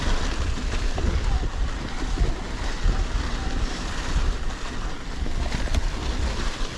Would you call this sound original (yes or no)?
yes